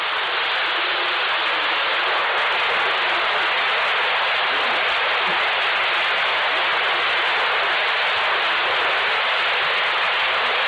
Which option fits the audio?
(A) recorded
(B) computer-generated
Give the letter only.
A